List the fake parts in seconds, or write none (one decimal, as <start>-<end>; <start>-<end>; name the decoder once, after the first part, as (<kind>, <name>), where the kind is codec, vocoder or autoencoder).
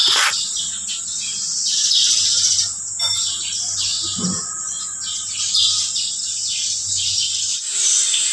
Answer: none